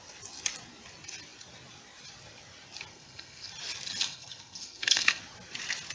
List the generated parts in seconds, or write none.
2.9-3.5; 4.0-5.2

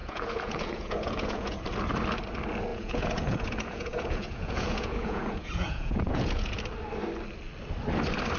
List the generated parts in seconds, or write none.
0.0-1.6; 2.7-6.6

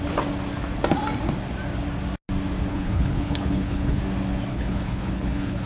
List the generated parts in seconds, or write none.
2.7-4.0; 4.5-5.7

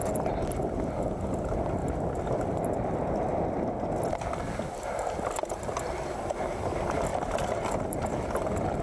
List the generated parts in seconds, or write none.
none

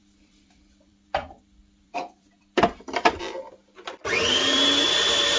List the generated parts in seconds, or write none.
0.0-3.2

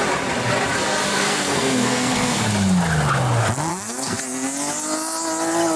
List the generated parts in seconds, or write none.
1.1-2.5; 3.7-4.2